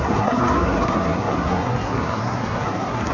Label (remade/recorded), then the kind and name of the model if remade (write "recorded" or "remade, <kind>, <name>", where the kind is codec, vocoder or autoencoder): remade, codec, SNAC